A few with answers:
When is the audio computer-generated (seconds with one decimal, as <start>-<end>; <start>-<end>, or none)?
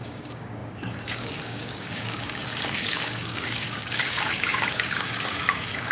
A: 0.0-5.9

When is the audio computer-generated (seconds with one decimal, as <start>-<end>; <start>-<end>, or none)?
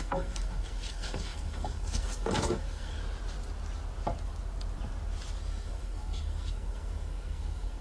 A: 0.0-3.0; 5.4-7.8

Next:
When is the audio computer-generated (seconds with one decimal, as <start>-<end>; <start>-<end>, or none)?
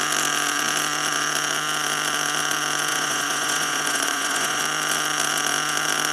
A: 2.9-4.6